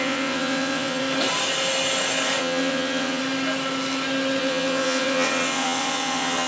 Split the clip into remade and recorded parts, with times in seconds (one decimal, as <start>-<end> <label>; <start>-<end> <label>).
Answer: 0.0-1.0 remade; 1.0-2.4 recorded; 2.4-3.2 remade; 3.2-4.4 recorded; 4.4-6.5 remade